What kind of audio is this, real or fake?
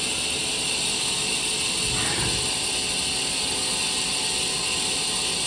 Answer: real